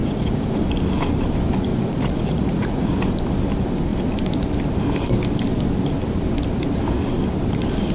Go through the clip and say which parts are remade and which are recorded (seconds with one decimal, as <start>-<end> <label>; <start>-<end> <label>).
0.0-0.6 remade; 0.6-1.7 recorded; 1.7-2.9 remade; 2.9-7.9 recorded